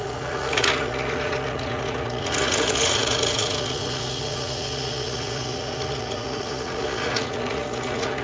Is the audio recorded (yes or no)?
no